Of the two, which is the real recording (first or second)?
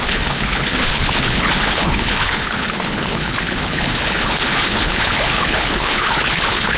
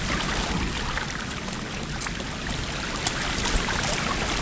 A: second